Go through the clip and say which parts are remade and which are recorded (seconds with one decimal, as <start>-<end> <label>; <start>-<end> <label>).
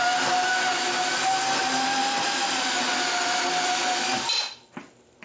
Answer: 0.0-5.2 recorded